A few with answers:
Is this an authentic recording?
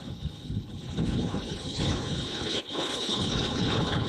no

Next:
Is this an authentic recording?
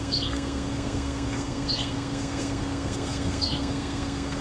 no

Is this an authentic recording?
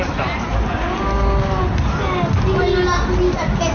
yes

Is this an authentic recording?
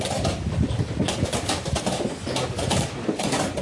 yes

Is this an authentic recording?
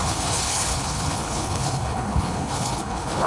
no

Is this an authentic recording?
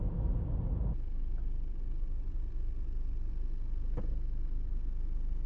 yes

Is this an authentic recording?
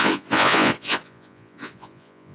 no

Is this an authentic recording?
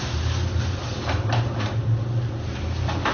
yes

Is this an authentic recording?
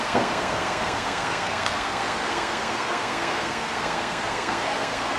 no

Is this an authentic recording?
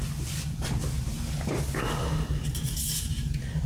yes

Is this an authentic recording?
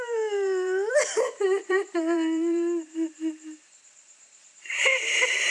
no